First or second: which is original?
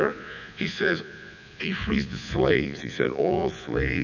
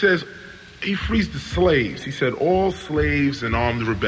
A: second